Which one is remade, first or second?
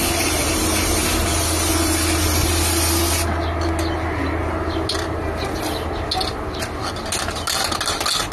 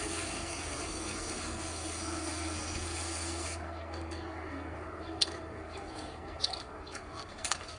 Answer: second